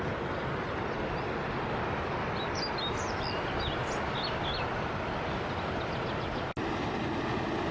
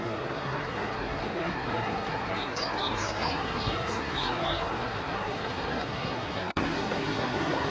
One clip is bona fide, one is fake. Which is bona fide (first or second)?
first